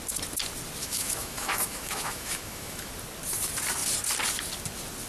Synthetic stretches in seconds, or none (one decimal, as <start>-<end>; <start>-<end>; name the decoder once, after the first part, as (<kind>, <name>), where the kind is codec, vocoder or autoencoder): 0.8-2.9 (autoencoder, DAC-VAE)